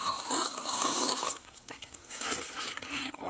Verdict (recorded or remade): remade